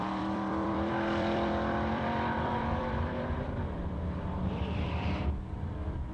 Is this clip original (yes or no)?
no